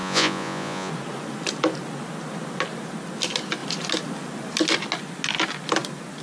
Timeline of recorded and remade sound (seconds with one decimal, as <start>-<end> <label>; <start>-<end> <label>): 0.0-0.9 remade; 0.9-6.2 recorded